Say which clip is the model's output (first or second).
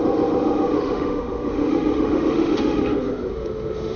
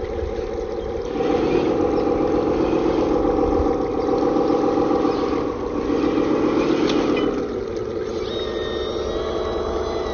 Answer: first